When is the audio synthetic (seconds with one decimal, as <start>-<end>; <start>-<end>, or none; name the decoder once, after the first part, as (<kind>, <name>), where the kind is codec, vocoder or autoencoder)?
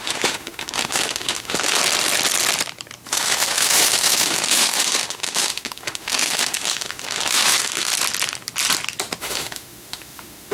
0.0-1.8 (autoencoder, DAC-VAE); 3.1-7.9; 9.2-10.5